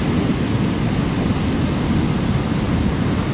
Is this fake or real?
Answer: real